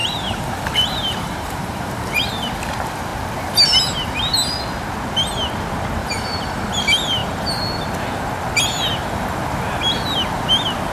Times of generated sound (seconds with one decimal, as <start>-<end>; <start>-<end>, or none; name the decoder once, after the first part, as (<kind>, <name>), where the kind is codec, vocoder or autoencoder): 0.0-2.3 (vocoder, BigVGAN v2); 6.0-6.8